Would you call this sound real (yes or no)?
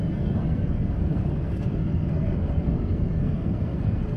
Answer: no